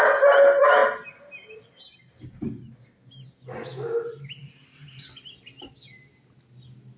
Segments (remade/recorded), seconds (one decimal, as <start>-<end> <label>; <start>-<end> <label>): 0.0-7.0 recorded

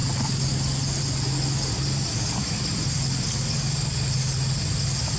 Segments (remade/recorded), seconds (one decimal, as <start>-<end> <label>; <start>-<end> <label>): 0.0-5.2 recorded

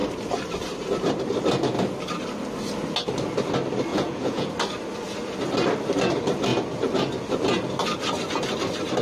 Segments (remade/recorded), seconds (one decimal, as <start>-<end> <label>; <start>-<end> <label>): 0.0-3.9 recorded; 3.9-4.5 remade; 4.5-9.0 recorded

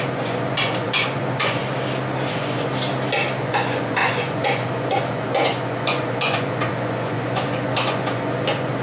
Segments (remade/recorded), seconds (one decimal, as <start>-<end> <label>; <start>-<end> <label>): 0.0-1.6 remade; 1.6-2.3 recorded; 2.3-2.7 remade; 2.7-3.4 recorded; 3.4-8.8 remade

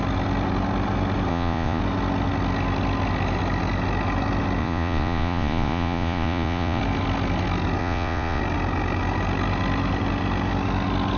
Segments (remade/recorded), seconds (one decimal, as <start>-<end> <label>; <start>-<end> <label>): 0.0-1.3 recorded; 1.3-1.8 remade; 1.8-4.6 recorded; 4.6-6.8 remade; 6.8-7.8 recorded; 7.8-8.4 remade; 8.4-11.2 recorded

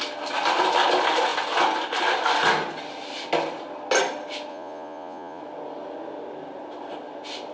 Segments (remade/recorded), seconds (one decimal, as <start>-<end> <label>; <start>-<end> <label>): 0.0-4.5 recorded; 4.5-5.4 remade; 5.4-7.5 recorded

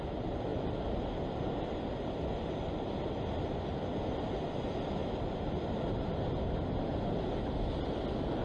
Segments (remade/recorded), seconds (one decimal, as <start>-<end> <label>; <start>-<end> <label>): 0.0-8.4 recorded